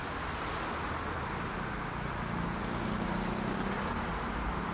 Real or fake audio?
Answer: real